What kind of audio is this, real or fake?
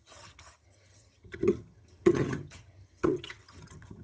fake